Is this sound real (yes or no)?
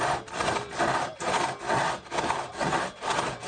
yes